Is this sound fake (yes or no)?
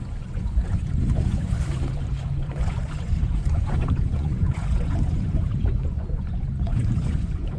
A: yes